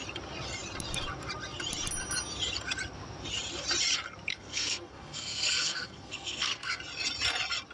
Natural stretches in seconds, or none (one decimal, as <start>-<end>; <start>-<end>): 0.0-4.3; 6.8-7.7